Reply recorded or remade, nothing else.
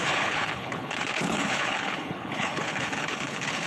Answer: remade